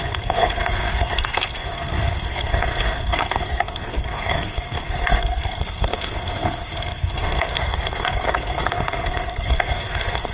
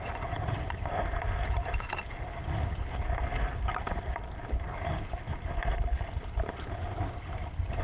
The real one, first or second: second